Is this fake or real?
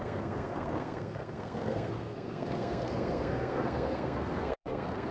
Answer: fake